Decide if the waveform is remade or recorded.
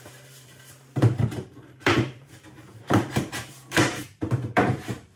remade